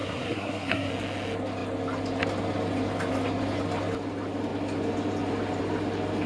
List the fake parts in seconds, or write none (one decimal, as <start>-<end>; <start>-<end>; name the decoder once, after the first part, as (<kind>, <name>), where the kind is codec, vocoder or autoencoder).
0.0-0.9 (codec, SNAC)